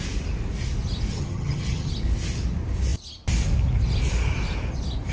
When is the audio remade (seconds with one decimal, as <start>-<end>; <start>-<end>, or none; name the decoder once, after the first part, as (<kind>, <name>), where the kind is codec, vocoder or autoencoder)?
1.1-1.9 (vocoder, HiFi-GAN)